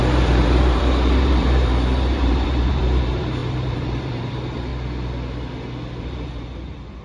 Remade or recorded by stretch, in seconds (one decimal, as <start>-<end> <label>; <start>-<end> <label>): 0.0-4.7 remade; 4.7-6.0 recorded; 6.0-7.0 remade

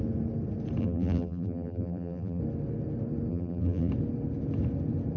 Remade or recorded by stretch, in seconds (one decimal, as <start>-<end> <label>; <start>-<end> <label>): 0.0-0.8 recorded; 0.8-2.4 remade; 2.4-3.3 recorded; 3.3-3.9 remade; 3.9-5.2 recorded

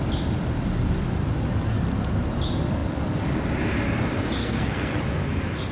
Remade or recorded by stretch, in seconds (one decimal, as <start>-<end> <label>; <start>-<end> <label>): 0.0-4.4 recorded; 4.4-5.0 remade; 5.0-5.7 recorded